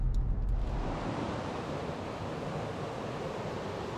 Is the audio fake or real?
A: real